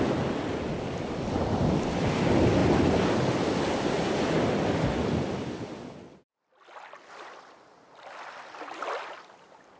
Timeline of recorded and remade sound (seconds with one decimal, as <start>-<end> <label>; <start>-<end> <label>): 0.0-9.8 recorded